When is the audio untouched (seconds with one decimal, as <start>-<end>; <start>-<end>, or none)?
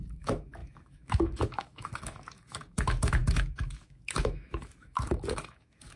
none